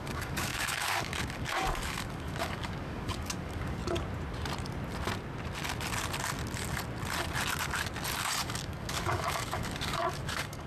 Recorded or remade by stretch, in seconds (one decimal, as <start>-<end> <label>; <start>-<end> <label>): 0.0-3.8 remade; 3.8-8.4 recorded; 8.4-10.7 remade